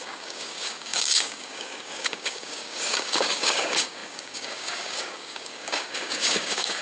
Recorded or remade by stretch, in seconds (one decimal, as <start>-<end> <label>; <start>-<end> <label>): 0.0-6.8 remade